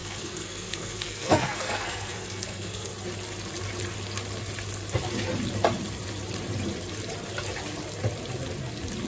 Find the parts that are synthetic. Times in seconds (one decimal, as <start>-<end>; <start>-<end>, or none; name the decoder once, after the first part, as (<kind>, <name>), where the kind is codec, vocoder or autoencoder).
0.0-2.9 (codec, SNAC)